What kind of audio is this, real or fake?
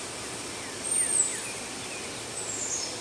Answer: real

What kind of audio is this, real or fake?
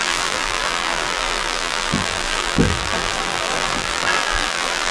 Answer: fake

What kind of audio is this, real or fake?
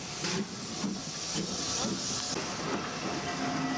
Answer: real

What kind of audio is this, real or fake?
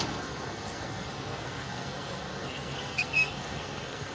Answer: fake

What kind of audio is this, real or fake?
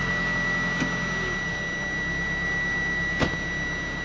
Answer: real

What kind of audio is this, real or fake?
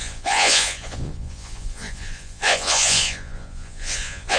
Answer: fake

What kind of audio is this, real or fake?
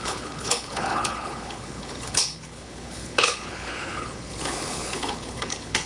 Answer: fake